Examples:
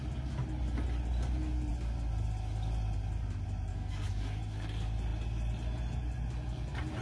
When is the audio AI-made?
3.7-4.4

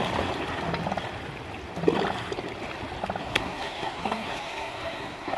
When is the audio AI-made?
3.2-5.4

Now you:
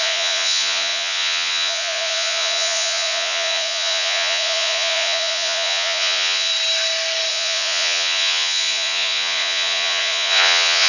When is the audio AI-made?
0.0-6.5; 7.3-10.9

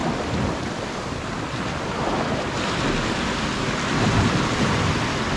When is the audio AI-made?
0.0-2.6

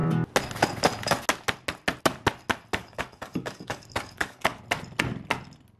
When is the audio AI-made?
2.8-4.6

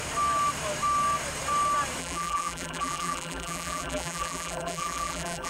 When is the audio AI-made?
2.0-5.5

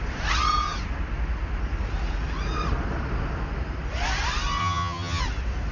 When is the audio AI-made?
4.6-5.2